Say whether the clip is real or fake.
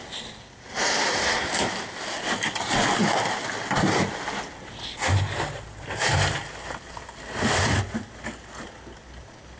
real